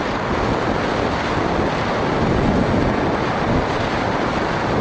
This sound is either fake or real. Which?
real